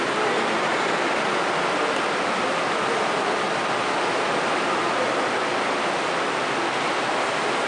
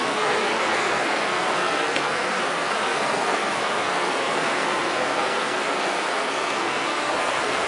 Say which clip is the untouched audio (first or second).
first